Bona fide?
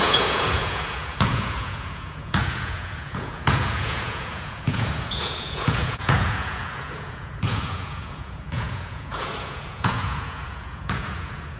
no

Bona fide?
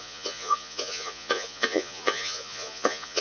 no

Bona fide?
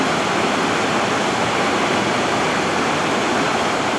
yes